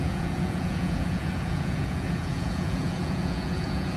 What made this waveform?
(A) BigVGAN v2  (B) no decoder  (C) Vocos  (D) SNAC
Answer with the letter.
C